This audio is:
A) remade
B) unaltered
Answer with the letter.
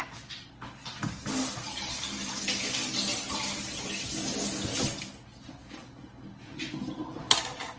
B